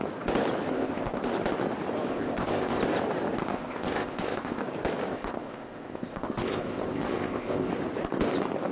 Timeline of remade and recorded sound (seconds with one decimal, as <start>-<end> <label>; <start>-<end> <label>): 0.0-0.7 recorded; 0.7-1.3 remade; 1.3-2.1 recorded; 2.1-2.8 remade; 2.8-3.5 recorded; 3.5-4.6 remade; 4.6-5.1 recorded; 5.1-7.7 remade; 7.7-8.7 recorded